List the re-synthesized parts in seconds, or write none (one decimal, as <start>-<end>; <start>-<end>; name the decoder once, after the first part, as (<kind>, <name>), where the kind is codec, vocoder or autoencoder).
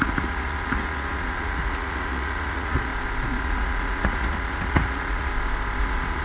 0.0-2.9 (vocoder, Vocos); 3.4-5.3; 5.8-6.2